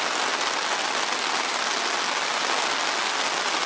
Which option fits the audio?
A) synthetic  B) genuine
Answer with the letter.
B